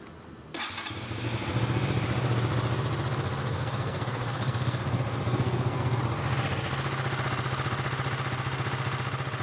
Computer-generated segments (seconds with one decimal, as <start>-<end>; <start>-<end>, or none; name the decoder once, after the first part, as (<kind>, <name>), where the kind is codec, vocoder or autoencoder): 3.4-6.0 (codec, SNAC)